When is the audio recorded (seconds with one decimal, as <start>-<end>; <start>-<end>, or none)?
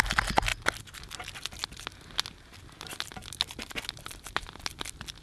0.0-5.2